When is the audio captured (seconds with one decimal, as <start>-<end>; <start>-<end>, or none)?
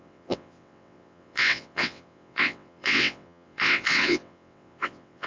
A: none